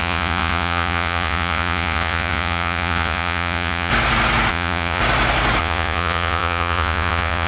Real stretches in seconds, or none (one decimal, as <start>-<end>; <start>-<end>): 3.9-4.5; 5.0-5.6